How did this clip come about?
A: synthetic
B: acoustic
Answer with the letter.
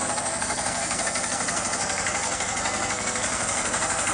A